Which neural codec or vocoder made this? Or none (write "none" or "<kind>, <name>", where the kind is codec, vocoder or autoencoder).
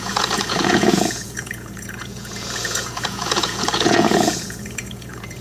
vocoder, Vocos